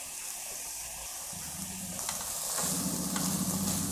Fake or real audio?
real